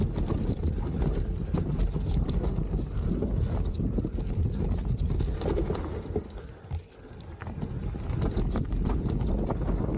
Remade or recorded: recorded